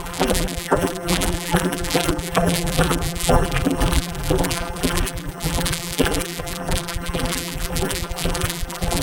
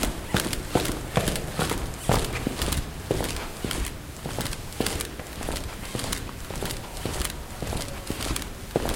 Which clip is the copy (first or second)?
first